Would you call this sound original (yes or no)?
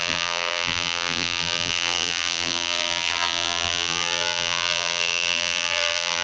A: no